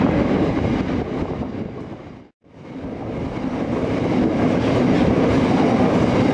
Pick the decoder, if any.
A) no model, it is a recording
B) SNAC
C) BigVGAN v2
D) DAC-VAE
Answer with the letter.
A